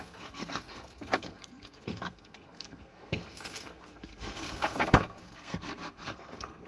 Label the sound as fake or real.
fake